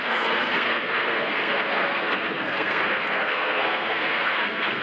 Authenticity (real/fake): fake